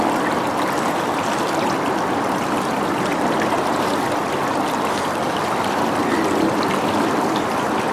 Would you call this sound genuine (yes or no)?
yes